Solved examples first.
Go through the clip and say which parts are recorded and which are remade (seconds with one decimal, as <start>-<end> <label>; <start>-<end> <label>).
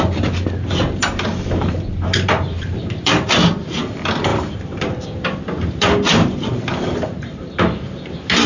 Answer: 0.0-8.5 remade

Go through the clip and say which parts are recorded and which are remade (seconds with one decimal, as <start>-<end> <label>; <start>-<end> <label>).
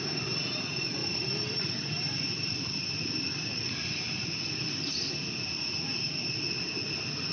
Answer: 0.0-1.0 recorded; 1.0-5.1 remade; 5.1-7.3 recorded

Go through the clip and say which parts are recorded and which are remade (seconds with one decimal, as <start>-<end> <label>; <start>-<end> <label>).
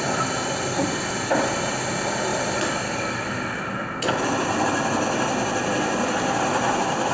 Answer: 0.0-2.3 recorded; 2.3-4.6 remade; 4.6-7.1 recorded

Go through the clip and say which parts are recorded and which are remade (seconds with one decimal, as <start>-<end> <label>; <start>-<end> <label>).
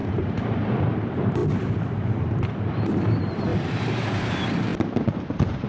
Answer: 0.0-1.4 remade; 1.4-2.7 recorded; 2.7-5.7 remade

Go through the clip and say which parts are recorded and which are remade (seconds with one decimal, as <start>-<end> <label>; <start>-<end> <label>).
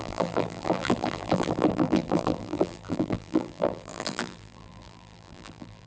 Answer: 0.0-5.9 remade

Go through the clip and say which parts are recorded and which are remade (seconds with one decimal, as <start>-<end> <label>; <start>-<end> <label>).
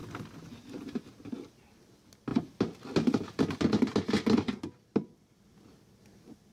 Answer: 0.0-6.5 recorded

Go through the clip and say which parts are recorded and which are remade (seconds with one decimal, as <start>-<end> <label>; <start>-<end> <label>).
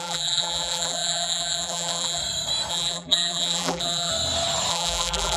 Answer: 0.0-2.2 remade; 2.2-2.7 recorded; 2.7-4.1 remade; 4.1-4.7 recorded; 4.7-5.4 remade